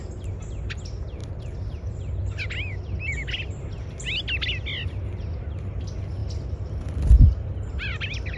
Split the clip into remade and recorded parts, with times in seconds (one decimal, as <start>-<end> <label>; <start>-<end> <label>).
0.0-1.2 recorded; 1.2-2.3 remade; 2.3-8.4 recorded